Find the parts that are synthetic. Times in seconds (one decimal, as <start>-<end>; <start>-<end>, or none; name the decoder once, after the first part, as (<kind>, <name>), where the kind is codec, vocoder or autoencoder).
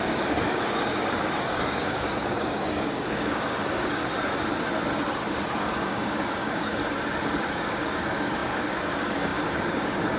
0.0-4.0 (codec, DAC); 5.6-6.8; 7.5-10.2